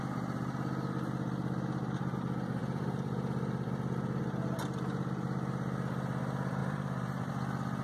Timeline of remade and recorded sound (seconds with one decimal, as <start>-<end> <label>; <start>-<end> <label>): 0.0-2.6 recorded; 2.6-4.2 remade; 4.2-6.6 recorded; 6.6-7.3 remade; 7.3-7.8 recorded